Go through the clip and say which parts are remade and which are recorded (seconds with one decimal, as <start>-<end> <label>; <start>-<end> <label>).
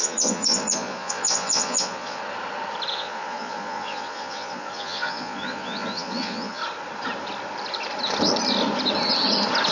0.0-2.2 remade; 2.2-2.9 recorded; 2.9-6.6 remade; 6.6-9.7 recorded